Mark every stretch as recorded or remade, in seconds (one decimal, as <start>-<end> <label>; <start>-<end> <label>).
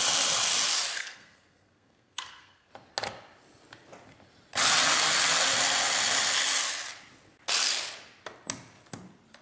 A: 0.0-1.0 recorded; 1.0-2.7 remade; 2.7-9.4 recorded